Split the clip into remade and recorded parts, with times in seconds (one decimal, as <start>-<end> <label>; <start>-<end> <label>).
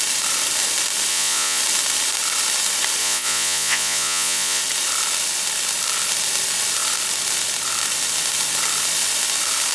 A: 0.0-1.1 recorded; 1.1-1.6 remade; 1.6-3.0 recorded; 3.0-4.6 remade; 4.6-9.7 recorded